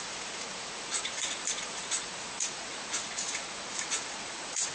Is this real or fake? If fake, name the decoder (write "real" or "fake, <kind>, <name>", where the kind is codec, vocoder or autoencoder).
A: fake, vocoder, Vocos